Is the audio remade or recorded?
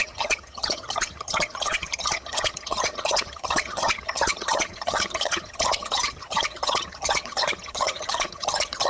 remade